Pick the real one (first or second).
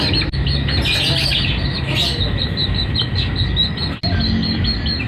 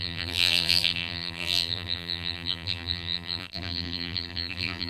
first